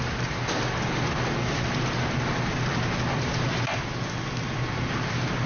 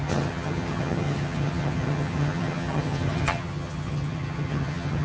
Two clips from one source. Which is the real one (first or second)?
first